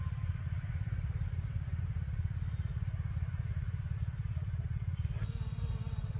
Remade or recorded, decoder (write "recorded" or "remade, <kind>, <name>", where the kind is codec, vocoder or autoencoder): recorded